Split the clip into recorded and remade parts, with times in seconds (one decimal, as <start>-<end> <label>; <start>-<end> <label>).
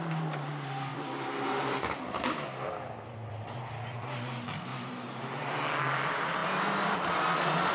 0.0-4.7 recorded; 4.7-5.5 remade; 5.5-6.4 recorded; 6.4-7.1 remade; 7.1-7.7 recorded